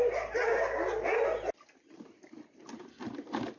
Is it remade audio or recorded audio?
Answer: recorded